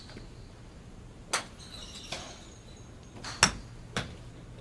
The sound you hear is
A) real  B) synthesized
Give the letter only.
A